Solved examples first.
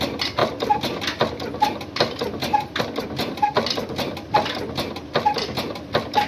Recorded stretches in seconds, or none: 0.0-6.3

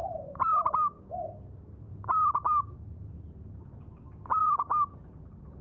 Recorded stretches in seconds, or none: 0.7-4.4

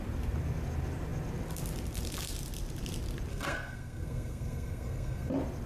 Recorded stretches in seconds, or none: 0.0-3.3; 5.3-5.7

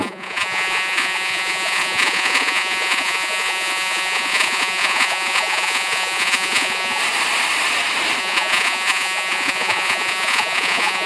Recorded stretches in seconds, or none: 7.0-8.2

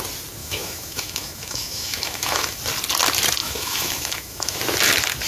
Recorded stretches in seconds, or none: 0.0-0.4; 2.6-3.4; 4.6-5.3

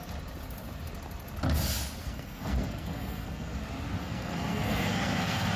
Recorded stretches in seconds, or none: 0.0-2.0; 3.6-4.0

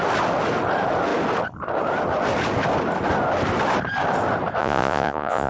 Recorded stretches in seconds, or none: 0.0-4.6